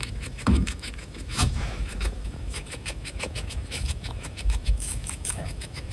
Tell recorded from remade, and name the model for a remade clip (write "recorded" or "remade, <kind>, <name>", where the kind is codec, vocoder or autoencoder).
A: remade, autoencoder, DAC-VAE